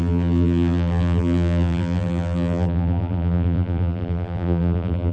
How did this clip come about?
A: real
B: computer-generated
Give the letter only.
B